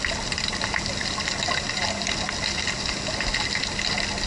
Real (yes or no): yes